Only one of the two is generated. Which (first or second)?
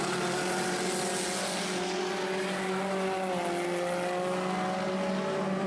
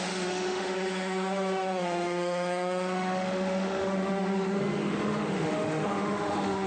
second